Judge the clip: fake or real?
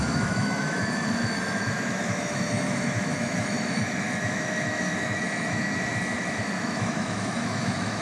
fake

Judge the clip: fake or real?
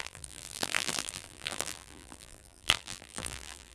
fake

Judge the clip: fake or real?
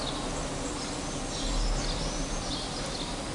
real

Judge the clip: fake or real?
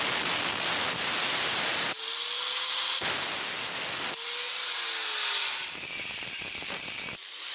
real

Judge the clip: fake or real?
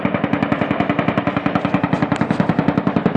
real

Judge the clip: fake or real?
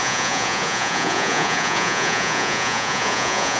fake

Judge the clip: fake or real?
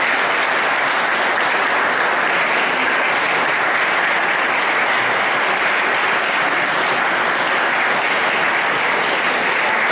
real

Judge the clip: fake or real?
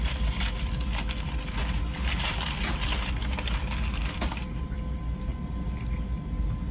real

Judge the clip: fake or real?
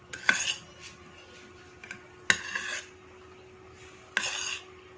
real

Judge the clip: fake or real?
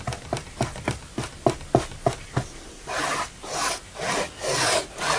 real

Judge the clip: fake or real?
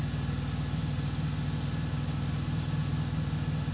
real